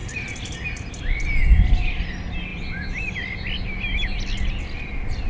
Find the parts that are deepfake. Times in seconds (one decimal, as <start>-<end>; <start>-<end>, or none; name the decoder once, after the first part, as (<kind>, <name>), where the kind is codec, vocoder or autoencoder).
0.0-1.0 (vocoder, BigVGAN v2)